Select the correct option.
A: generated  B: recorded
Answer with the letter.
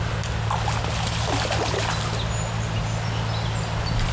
B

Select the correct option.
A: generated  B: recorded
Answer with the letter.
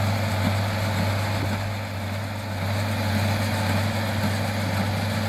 B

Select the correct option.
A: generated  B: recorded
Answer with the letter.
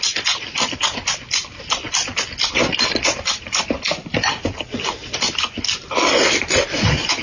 B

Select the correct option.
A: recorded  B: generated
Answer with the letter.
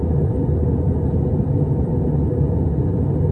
A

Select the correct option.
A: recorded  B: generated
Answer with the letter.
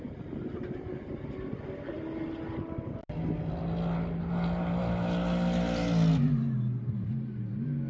A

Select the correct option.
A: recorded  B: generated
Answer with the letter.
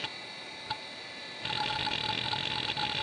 A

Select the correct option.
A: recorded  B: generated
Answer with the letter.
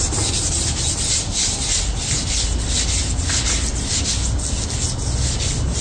A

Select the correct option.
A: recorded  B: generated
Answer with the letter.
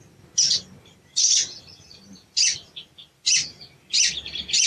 A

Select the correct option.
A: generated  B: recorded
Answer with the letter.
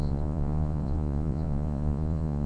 A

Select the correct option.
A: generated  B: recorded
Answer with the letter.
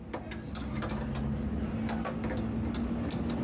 B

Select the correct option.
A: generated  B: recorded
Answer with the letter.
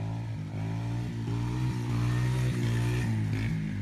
B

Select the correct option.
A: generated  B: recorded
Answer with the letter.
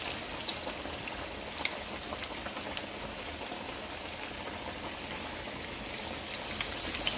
B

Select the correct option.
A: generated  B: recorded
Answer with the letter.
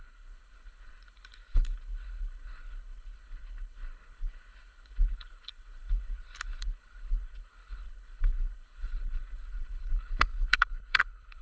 A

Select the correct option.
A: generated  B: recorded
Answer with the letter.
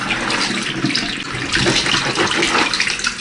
B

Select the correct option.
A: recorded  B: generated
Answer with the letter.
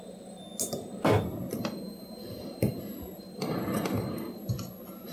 A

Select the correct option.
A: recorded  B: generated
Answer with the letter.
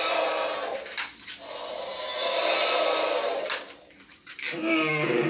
A